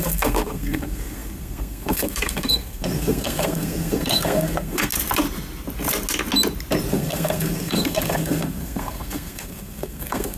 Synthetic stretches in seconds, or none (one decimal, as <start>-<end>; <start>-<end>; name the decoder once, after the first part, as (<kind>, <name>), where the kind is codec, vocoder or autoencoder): 0.0-4.9 (codec, SNAC); 6.9-10.4